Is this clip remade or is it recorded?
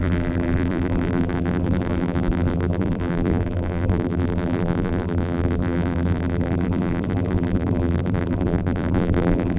remade